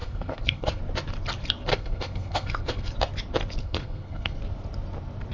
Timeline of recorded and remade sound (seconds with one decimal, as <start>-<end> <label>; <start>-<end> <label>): 0.0-0.8 remade; 0.8-1.7 recorded; 1.7-2.9 remade; 2.9-3.6 recorded; 3.6-4.4 remade; 4.4-5.3 recorded